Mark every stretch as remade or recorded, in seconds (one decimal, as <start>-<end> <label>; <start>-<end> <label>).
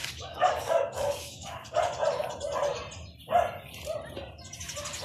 0.0-1.8 remade; 1.8-5.0 recorded